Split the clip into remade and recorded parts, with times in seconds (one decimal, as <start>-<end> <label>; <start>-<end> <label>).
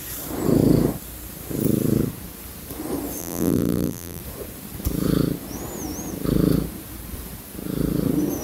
0.0-3.2 recorded; 3.2-4.2 remade; 4.2-8.4 recorded